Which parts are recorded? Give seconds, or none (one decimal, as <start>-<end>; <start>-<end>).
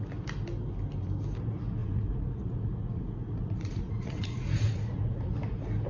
0.0-1.8; 5.3-5.9